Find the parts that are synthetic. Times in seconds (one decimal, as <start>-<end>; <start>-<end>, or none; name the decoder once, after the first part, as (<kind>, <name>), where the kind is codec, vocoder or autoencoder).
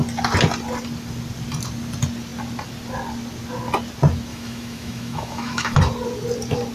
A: 4.3-5.8 (autoencoder, DAC-VAE)